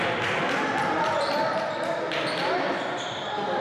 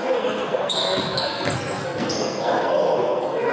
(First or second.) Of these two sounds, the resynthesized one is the second